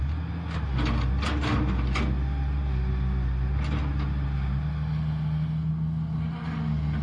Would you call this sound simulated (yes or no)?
no